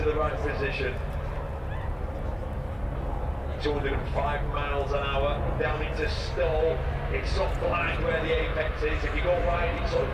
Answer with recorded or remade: recorded